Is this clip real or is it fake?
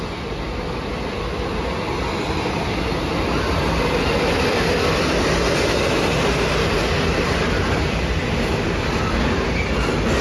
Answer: real